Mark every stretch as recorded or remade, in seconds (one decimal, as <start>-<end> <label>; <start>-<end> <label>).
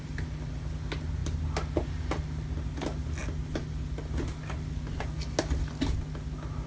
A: 0.0-6.7 recorded